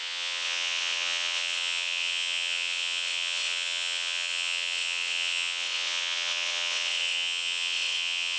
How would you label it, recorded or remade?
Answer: remade